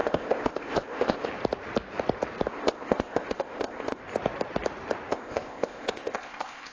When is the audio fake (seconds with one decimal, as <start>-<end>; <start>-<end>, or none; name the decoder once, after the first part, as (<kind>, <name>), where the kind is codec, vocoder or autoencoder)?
0.0-1.3 (codec, ZipCodec); 2.5-4.0; 5.1-6.7